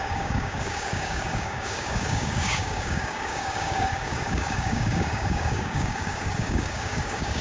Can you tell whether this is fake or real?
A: fake